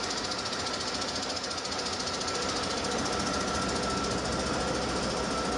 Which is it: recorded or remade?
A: recorded